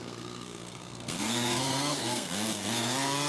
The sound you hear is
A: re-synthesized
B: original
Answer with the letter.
A